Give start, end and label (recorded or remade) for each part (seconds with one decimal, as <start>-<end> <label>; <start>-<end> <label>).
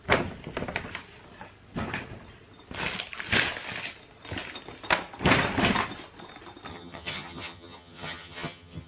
0.0-6.7 recorded; 6.7-8.9 remade